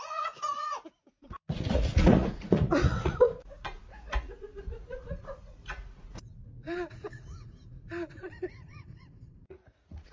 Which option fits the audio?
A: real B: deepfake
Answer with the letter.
B